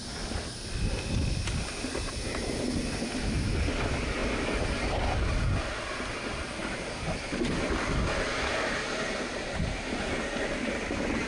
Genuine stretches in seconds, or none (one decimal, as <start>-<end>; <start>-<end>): 0.0-11.3